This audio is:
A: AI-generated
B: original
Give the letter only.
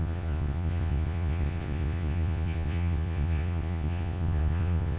A